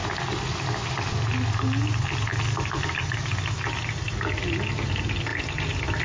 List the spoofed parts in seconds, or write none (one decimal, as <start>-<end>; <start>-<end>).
none